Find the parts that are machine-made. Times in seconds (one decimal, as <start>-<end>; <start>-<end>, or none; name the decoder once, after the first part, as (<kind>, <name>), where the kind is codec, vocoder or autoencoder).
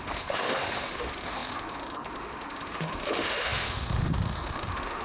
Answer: 0.0-5.0 (autoencoder, DAC-VAE)